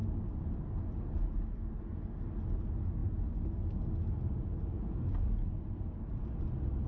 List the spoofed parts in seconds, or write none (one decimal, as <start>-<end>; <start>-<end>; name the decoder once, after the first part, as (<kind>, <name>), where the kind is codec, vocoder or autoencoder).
none